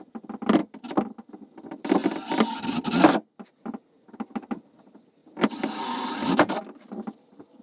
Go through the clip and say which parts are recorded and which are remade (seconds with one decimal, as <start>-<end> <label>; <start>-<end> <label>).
0.0-2.0 remade; 2.0-4.5 recorded; 4.5-5.2 remade; 5.2-6.3 recorded; 6.3-7.6 remade